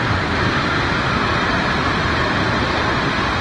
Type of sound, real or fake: real